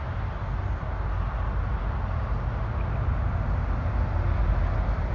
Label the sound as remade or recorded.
recorded